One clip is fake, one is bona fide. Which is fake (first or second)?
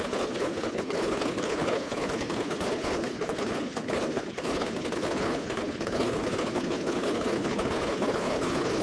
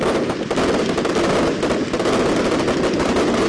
first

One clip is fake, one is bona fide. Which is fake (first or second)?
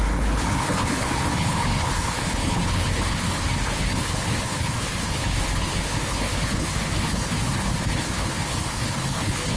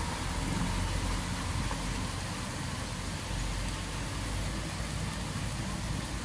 first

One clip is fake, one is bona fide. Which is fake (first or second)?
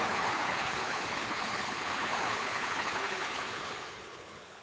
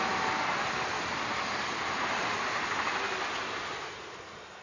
first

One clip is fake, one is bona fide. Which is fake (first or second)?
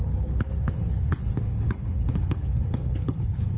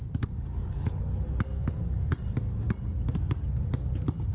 first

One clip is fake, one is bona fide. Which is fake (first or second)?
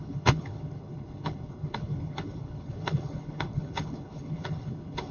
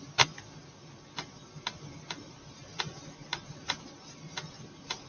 first